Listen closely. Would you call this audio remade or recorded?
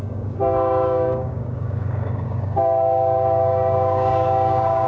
remade